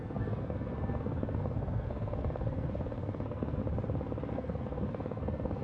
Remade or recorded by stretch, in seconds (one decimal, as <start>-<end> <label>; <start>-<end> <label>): 0.0-3.6 remade; 3.6-4.3 recorded; 4.3-5.6 remade